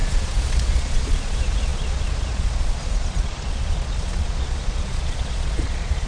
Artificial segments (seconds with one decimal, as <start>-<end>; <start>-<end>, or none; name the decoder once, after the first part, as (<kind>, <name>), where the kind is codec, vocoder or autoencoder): 0.0-6.1 (vocoder, Vocos)